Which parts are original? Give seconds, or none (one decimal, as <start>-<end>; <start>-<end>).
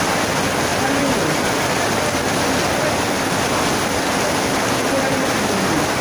0.0-6.0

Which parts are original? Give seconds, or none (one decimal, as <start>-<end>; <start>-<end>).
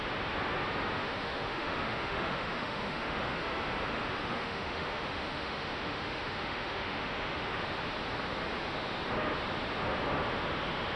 0.0-1.0; 3.4-3.9; 7.6-11.0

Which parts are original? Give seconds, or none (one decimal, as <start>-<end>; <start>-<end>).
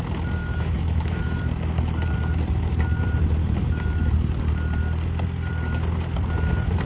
0.0-0.4; 1.4-3.4; 4.1-6.9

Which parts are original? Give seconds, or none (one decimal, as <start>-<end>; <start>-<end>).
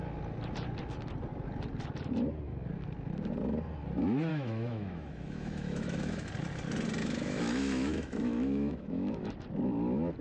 0.0-4.3; 6.3-7.0; 9.3-10.2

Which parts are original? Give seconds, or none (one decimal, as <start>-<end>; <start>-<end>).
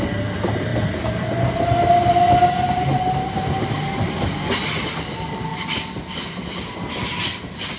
0.0-7.8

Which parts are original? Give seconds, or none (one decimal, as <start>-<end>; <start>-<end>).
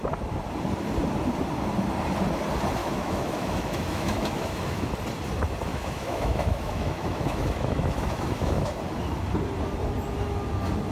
0.0-2.8; 4.9-5.7; 8.8-10.9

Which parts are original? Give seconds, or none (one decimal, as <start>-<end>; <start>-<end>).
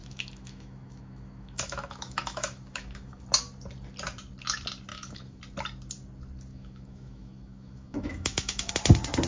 3.2-4.9; 5.4-6.5; 8.7-9.3